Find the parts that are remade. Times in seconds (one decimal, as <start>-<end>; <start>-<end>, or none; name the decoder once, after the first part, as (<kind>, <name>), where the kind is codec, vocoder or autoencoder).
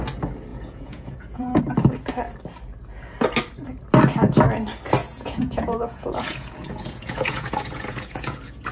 0.5-1.6 (vocoder, Vocos); 5.0-8.7